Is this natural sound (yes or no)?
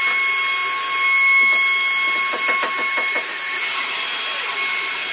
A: yes